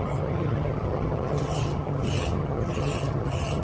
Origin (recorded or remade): remade